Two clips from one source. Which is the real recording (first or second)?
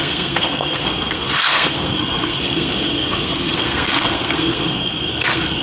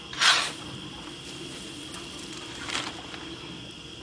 second